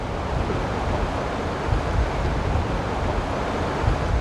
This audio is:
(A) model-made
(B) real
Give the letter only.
B